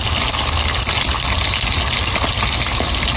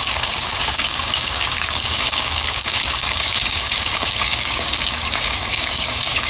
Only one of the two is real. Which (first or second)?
first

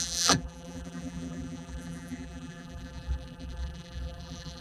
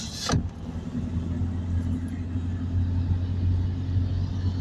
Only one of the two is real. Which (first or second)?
second